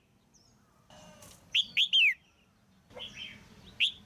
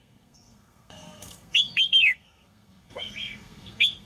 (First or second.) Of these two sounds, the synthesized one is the second